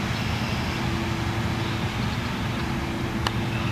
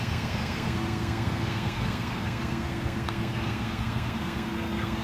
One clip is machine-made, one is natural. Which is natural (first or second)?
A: first